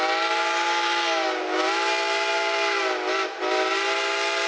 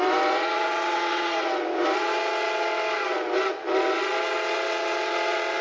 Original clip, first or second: first